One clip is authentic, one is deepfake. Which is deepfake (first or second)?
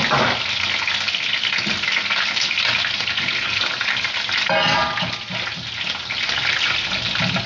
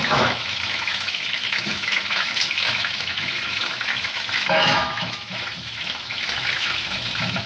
second